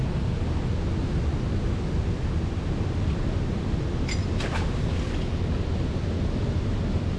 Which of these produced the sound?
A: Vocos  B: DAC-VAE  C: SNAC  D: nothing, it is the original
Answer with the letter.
D